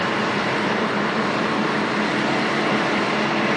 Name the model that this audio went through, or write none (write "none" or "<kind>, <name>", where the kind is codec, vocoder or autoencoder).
vocoder, BigVGAN v2